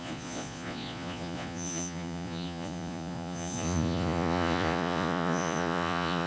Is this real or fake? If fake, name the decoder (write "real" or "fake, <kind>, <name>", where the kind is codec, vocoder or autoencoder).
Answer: fake, vocoder, Vocos